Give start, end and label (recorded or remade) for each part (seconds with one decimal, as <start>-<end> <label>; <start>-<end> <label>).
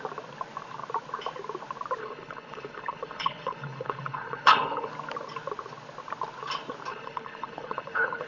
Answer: 0.0-2.0 recorded; 2.0-4.9 remade; 4.9-6.9 recorded; 6.9-8.3 remade